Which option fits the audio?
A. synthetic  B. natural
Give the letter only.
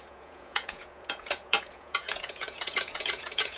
A